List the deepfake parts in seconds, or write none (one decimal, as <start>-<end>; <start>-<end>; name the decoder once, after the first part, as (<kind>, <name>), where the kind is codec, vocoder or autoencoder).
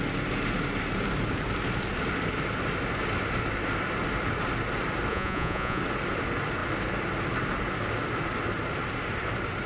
5.1-5.8 (vocoder, Vocos)